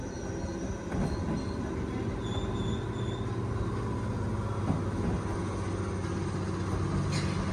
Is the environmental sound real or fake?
real